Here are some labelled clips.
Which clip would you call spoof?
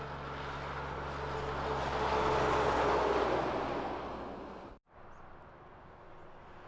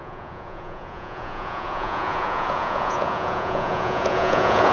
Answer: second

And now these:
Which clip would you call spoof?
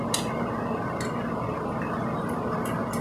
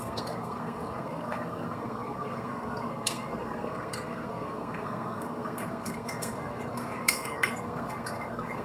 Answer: second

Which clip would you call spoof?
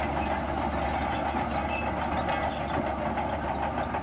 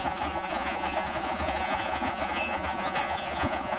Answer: second